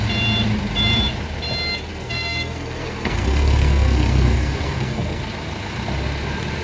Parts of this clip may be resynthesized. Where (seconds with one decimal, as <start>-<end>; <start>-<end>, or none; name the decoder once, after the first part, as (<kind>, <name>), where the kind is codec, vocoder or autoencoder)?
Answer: 1.9-5.2 (codec, SNAC)